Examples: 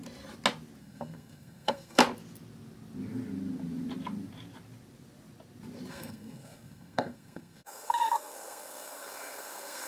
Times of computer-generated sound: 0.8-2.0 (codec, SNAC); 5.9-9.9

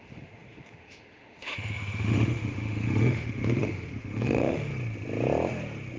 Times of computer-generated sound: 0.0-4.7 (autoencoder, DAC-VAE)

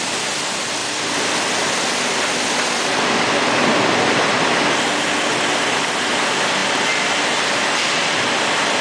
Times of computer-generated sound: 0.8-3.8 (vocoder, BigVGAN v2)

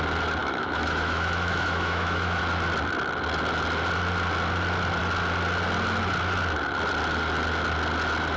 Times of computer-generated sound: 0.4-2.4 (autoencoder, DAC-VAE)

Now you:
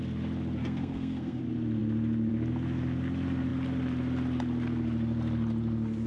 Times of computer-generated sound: 0.6-1.4 (codec, SNAC)